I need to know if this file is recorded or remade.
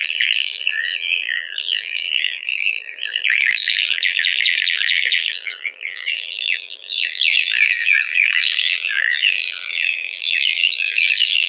remade